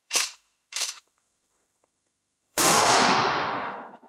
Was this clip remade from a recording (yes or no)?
yes